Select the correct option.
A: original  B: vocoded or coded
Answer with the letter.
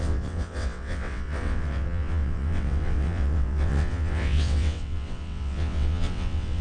B